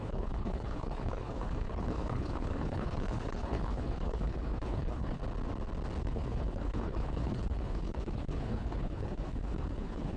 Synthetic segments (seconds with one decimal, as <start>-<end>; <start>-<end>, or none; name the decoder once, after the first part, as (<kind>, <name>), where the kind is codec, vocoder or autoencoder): 0.0-5.2 (codec, HILCodec); 6.0-10.2